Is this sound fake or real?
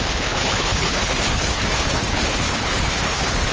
fake